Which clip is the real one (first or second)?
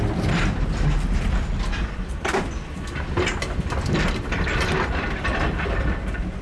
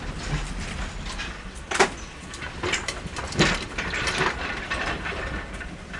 first